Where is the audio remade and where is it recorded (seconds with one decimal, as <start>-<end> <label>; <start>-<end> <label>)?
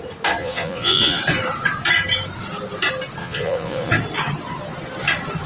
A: 0.0-0.4 recorded; 0.4-1.2 remade; 1.2-3.2 recorded; 3.2-3.9 remade; 3.9-5.5 recorded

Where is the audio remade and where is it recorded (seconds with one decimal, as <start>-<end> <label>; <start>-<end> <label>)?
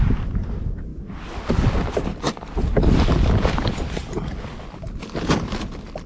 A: 0.0-6.1 recorded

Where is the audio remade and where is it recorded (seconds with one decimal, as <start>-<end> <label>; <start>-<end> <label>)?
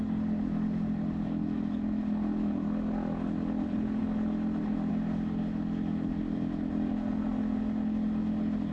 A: 0.0-8.7 recorded